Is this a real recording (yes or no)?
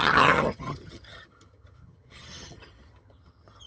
no